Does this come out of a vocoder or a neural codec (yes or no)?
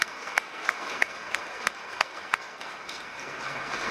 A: yes